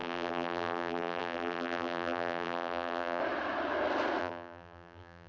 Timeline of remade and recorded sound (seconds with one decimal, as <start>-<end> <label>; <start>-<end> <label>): 0.0-3.2 remade; 3.2-4.2 recorded; 4.2-5.3 remade